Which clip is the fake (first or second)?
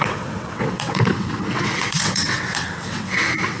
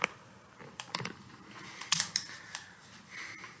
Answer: first